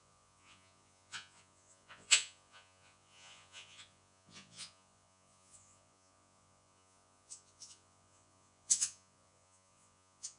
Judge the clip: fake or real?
fake